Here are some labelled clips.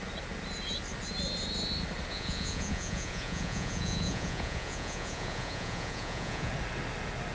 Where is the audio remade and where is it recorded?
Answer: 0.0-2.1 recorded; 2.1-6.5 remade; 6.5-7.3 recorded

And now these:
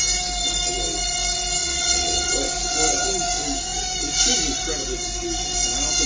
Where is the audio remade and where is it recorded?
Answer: 0.0-1.6 recorded; 1.6-2.3 remade; 2.3-6.1 recorded

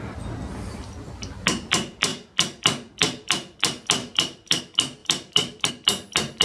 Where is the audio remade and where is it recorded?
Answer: 0.0-4.0 recorded; 4.0-4.6 remade; 4.6-5.0 recorded; 5.0-5.7 remade; 5.7-6.4 recorded

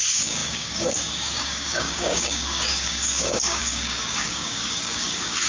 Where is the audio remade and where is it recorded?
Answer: 0.0-5.5 remade